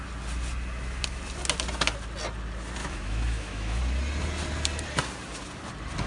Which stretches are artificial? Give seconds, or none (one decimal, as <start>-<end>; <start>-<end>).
2.8-3.8